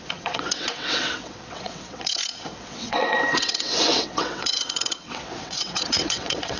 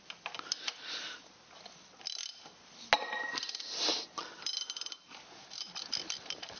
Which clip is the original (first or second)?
second